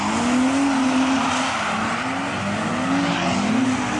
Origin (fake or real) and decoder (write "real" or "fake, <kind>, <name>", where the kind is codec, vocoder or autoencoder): real